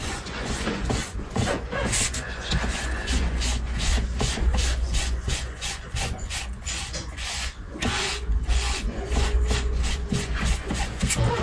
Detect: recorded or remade remade